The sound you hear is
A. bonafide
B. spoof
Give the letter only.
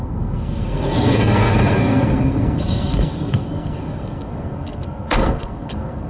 B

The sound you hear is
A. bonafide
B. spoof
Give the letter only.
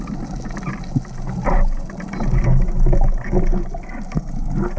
A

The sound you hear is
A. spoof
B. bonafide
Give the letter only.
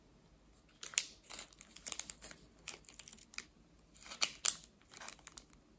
B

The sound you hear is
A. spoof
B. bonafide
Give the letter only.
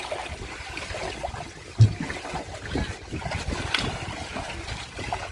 B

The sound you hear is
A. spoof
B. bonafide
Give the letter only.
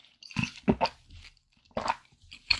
B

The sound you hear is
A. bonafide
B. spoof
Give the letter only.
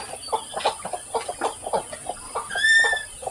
A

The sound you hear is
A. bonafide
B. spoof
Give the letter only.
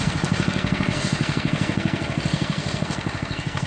B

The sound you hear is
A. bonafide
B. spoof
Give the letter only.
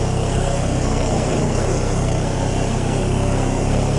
B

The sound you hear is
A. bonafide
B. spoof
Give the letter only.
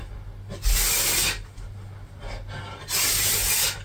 A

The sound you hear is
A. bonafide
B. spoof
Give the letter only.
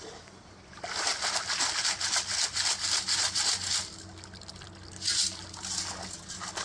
A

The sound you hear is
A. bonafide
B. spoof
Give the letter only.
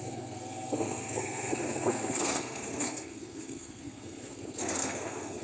B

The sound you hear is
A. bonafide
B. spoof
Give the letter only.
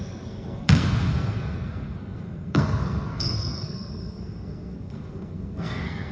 B